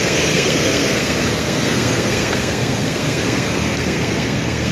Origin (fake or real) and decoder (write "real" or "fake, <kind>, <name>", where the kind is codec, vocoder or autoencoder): fake, codec, SNAC